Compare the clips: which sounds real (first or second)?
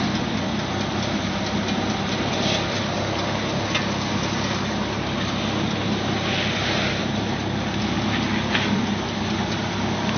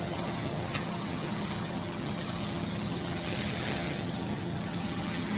first